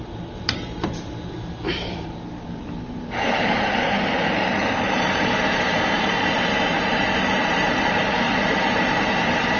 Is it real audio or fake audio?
fake